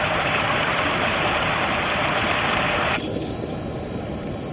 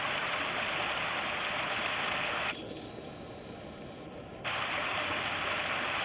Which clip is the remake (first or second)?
first